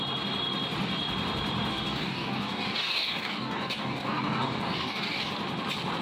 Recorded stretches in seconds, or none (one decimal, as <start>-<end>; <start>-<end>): 0.0-1.7; 5.3-6.0